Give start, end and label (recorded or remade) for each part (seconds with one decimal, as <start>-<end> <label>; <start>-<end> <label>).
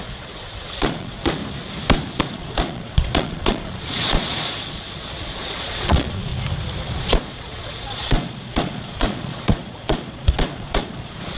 0.0-1.4 remade; 1.4-2.2 recorded; 2.2-6.3 remade; 6.3-7.0 recorded; 7.0-11.4 remade